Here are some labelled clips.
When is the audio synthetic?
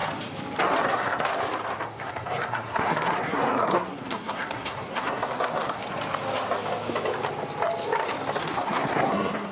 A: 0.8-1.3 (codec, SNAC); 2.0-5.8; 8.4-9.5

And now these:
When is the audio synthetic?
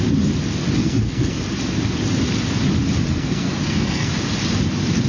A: 0.8-1.4 (codec, SNAC); 3.1-4.1